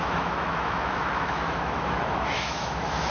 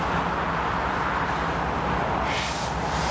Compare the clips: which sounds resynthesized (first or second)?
first